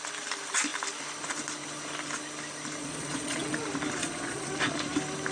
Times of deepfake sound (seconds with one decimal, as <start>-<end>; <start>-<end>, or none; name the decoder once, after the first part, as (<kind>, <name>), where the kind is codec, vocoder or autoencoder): 2.8-3.6 (vocoder, Vocos); 4.0-4.5